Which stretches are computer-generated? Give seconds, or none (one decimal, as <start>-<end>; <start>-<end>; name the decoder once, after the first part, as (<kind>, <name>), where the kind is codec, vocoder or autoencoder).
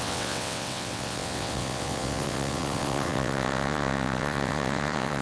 0.0-5.2 (vocoder, WaveNeXt)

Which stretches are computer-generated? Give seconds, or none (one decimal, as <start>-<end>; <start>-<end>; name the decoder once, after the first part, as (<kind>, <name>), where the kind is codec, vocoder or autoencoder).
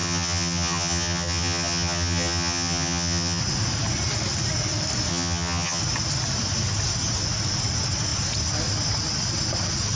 0.0-3.4 (vocoder, HiFi-GAN); 5.1-5.8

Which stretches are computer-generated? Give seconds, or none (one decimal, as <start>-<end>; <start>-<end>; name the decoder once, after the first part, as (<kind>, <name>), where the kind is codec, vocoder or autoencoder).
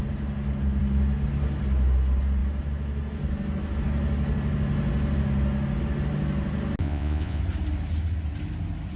6.8-7.4 (vocoder, Vocos)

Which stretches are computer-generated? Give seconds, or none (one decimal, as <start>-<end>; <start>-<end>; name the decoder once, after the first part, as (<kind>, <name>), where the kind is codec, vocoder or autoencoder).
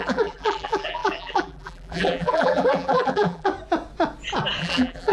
0.0-3.5 (vocoder, BigVGAN v2); 4.6-5.1